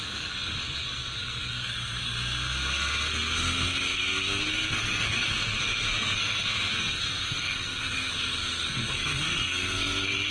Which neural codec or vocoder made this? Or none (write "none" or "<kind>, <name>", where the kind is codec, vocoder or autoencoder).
codec, SNAC